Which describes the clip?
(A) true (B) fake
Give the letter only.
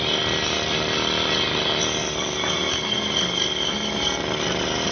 A